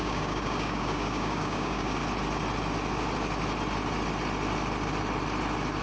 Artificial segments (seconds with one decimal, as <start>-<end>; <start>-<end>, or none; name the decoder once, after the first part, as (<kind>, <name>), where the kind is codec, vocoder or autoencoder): 0.0-2.0 (codec, DAC)